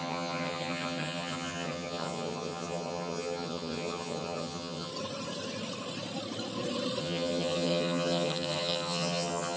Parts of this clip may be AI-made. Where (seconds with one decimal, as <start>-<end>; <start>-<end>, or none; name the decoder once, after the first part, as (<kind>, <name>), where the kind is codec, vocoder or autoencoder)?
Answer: 0.0-4.9 (vocoder, HiFi-GAN); 7.0-9.6